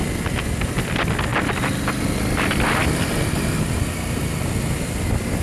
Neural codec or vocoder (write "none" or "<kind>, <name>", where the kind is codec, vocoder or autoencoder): none